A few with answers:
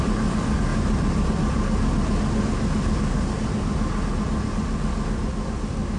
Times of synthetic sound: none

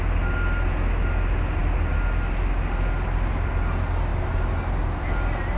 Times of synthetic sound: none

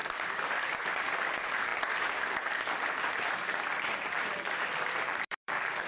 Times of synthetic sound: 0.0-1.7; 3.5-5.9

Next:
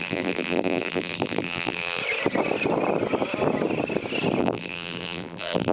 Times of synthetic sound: 0.0-2.0; 4.4-5.7

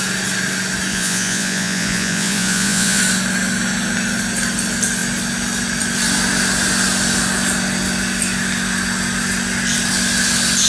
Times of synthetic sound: 0.9-3.0